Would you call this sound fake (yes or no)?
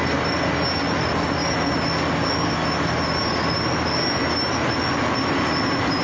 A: no